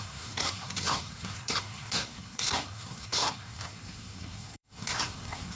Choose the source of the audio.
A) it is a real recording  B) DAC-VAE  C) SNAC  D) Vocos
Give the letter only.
C